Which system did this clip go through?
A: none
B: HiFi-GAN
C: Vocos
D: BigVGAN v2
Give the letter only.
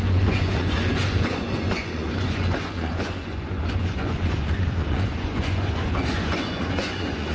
C